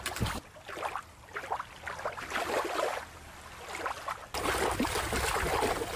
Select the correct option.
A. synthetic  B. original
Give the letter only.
B